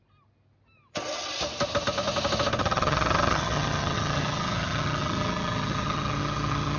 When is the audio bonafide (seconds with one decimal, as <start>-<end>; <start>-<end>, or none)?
0.0-2.6